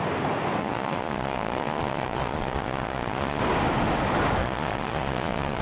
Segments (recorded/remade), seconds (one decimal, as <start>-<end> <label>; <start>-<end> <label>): 0.0-0.6 recorded; 0.6-3.4 remade; 3.4-4.4 recorded; 4.4-5.6 remade